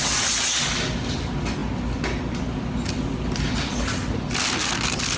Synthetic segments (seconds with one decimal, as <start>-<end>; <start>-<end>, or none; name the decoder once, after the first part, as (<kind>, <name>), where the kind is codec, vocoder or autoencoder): none

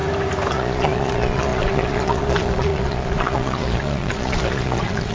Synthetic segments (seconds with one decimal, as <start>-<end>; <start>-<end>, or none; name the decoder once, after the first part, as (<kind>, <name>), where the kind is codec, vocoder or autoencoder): 0.5-5.1 (vocoder, Vocos)

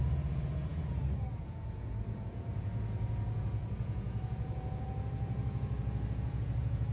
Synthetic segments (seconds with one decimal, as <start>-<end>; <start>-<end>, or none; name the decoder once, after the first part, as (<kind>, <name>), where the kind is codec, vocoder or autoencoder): 0.0-6.9 (vocoder, Vocos)

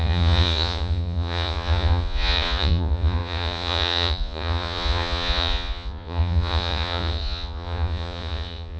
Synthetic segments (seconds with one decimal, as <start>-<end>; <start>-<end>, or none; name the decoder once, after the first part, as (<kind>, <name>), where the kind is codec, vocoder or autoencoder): 0.0-8.8 (vocoder, Vocos)